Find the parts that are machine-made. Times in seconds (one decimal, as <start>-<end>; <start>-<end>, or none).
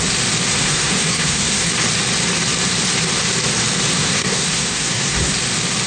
0.5-1.7; 3.9-5.3